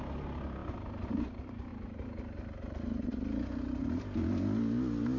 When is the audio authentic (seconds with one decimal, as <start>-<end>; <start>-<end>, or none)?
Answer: 0.0-5.2